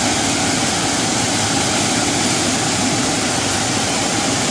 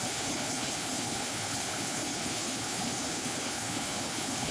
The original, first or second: first